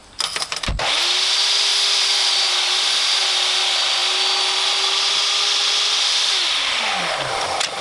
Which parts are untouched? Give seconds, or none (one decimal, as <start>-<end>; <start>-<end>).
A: 0.0-7.8